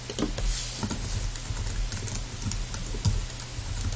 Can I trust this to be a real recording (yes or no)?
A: yes